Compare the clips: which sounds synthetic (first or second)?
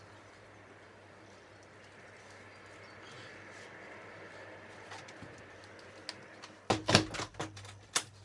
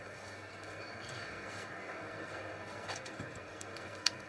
second